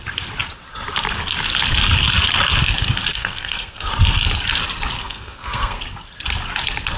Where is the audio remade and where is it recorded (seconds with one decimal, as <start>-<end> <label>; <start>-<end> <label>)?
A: 0.0-3.1 recorded; 3.1-3.9 remade; 3.9-5.0 recorded; 5.0-5.8 remade; 5.8-7.0 recorded